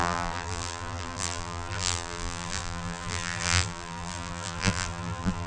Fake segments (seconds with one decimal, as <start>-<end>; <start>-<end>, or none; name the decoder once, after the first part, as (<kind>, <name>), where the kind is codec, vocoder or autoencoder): 0.0-5.5 (vocoder, BigVGAN v2)